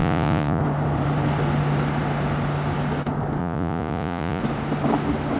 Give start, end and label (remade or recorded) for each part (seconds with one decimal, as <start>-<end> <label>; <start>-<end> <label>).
0.0-0.6 remade; 0.6-3.4 recorded; 3.4-4.4 remade; 4.4-5.4 recorded